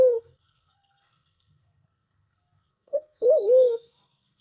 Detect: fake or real fake